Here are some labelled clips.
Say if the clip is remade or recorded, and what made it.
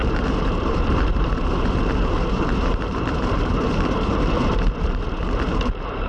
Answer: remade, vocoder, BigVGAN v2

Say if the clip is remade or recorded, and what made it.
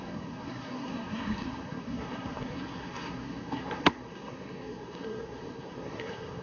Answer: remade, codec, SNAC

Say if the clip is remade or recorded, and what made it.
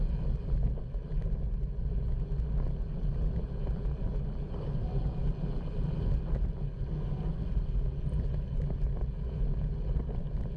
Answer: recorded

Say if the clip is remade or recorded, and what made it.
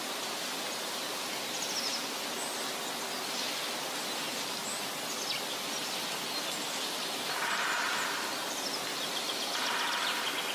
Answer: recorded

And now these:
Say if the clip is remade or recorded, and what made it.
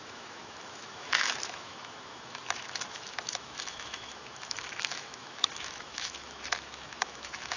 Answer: remade, autoencoder, DAC-VAE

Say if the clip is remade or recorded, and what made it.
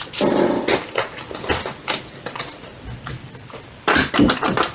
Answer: recorded